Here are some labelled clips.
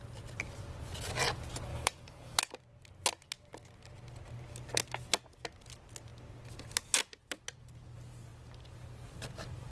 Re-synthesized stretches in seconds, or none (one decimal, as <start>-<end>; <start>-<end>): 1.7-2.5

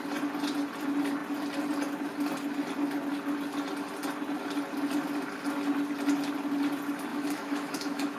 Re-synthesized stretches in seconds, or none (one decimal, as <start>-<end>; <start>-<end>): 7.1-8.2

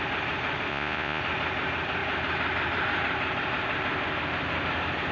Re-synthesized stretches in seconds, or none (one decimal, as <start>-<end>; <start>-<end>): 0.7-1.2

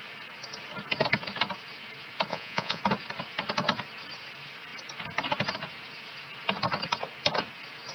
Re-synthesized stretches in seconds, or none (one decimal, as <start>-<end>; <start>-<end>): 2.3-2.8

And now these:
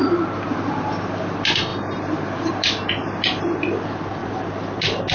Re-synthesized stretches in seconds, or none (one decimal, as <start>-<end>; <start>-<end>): none

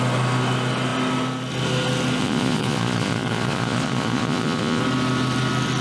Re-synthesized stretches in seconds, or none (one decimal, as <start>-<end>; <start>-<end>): 2.2-4.8

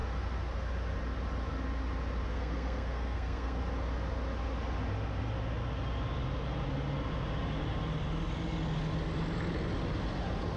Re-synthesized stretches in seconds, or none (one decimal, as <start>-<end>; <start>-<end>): 2.3-3.6